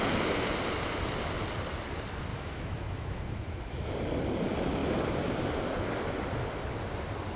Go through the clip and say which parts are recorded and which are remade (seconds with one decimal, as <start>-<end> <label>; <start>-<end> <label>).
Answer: 0.0-2.3 recorded; 2.3-3.9 remade; 3.9-7.4 recorded